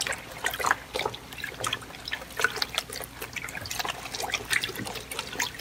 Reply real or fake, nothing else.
real